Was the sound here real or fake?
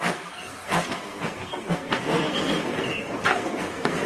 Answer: fake